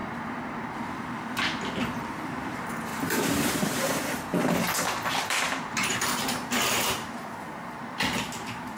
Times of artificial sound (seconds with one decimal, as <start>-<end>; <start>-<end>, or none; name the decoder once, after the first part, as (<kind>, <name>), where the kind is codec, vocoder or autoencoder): 2.0-4.3 (vocoder, BigVGAN v2); 5.1-8.8